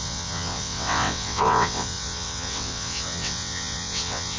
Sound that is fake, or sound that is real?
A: fake